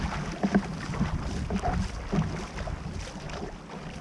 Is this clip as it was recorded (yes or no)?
yes